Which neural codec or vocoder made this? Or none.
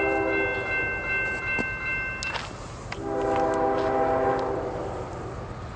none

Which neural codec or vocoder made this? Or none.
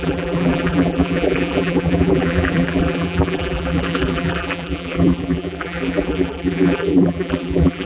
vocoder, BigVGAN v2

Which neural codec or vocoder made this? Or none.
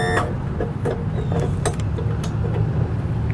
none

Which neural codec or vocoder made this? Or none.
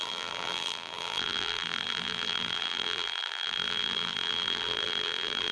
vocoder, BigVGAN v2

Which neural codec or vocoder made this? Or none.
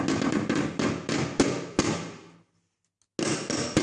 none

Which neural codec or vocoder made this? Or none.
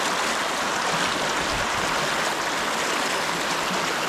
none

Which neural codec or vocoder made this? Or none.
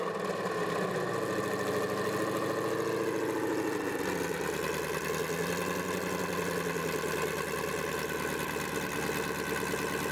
none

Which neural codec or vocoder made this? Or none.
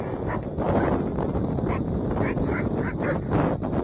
none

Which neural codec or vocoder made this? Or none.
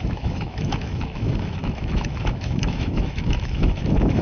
autoencoder, DAC-VAE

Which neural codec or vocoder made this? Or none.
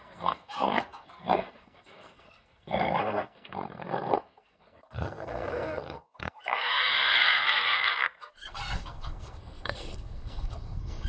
codec, SNAC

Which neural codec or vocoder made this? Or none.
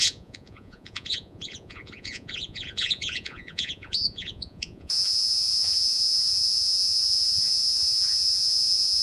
vocoder, Vocos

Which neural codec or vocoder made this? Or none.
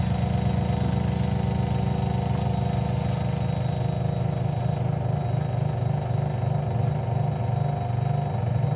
none